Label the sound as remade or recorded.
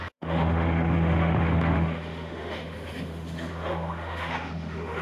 remade